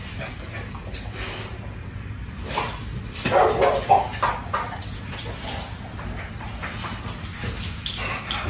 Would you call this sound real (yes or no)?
yes